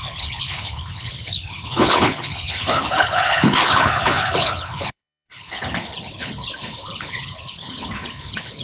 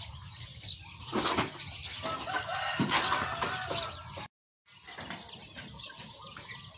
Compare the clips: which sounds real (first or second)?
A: second